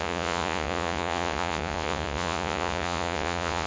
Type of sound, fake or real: fake